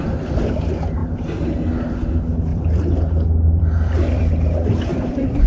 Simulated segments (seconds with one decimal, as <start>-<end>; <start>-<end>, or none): 2.5-4.3; 4.9-5.5